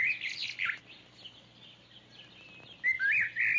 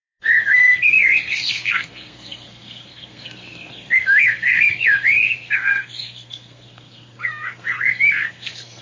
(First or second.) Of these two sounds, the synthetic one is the second